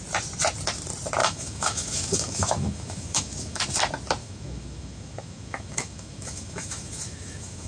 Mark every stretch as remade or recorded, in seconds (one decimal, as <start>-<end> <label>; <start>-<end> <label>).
0.0-1.2 recorded; 1.2-3.6 remade; 3.6-4.2 recorded; 4.2-7.7 remade